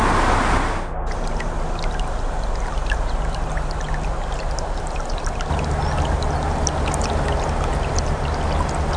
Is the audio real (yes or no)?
yes